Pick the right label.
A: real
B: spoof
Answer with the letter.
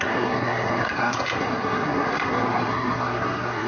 B